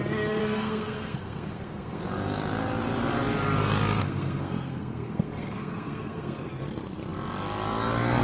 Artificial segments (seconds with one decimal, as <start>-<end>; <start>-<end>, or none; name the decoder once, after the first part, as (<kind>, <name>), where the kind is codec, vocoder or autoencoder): 0.4-2.0 (codec, SNAC); 4.0-6.5